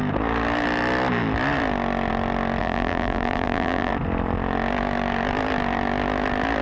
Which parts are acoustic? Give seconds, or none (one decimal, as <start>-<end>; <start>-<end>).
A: 0.0-2.6; 3.9-6.6